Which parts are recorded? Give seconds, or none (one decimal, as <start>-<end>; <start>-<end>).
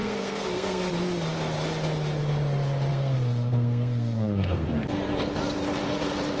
0.9-2.9; 4.7-6.4